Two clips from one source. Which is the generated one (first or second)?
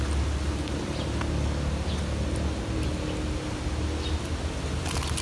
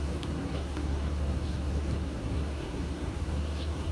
second